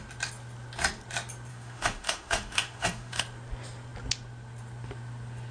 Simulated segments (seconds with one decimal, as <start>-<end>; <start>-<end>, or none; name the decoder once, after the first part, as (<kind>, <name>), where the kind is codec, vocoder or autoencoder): 1.5-3.2 (autoencoder, DAC-VAE)